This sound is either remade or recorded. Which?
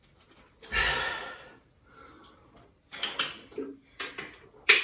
recorded